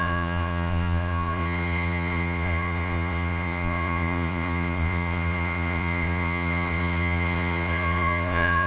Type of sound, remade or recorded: remade